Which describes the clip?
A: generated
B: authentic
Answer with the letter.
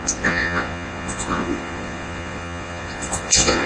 A